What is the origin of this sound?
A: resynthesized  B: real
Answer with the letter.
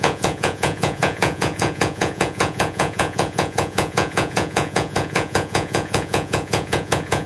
A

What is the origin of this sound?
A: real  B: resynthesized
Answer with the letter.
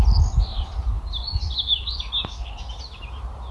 A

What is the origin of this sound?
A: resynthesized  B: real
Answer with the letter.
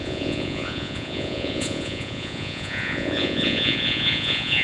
A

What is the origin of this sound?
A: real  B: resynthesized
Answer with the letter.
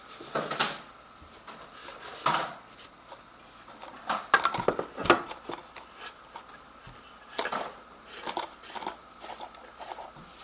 A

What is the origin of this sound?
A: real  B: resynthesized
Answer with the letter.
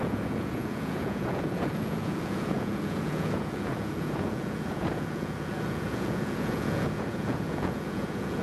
B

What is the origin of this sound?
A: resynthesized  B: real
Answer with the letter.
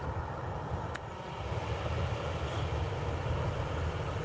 B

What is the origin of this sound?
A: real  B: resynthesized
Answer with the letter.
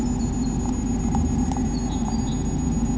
A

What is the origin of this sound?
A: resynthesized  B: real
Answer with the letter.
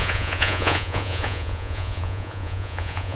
A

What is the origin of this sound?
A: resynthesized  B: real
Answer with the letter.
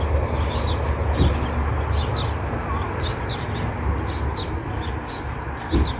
B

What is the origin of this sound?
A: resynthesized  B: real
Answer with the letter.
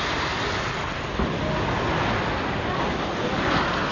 B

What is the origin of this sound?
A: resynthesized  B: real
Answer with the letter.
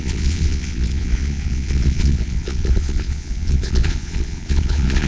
A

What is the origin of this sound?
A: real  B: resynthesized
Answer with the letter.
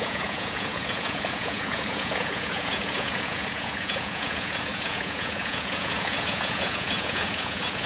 B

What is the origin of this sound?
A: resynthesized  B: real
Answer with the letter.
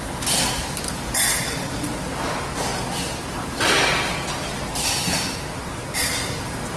B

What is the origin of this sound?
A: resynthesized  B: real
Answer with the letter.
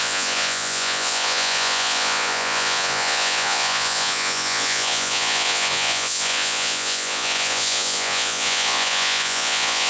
A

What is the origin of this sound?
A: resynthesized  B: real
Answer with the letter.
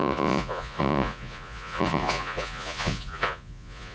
A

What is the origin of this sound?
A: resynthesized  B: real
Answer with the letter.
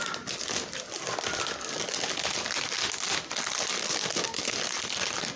B